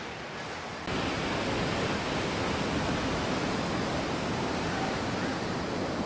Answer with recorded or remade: recorded